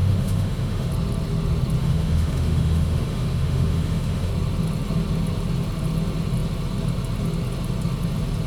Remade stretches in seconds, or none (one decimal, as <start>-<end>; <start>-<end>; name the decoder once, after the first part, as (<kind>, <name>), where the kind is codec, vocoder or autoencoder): 0.0-0.9 (autoencoder, DAC-VAE); 1.8-4.3